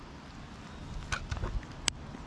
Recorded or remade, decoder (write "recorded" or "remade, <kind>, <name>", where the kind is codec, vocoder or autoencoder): recorded